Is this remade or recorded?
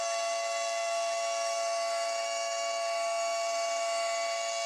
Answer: remade